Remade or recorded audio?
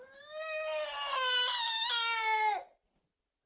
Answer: recorded